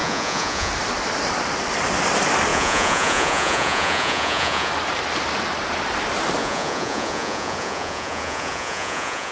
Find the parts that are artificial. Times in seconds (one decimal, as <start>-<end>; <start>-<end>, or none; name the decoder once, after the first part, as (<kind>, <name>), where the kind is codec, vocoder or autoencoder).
0.0-0.7 (vocoder, Vocos); 2.5-4.7; 6.4-9.3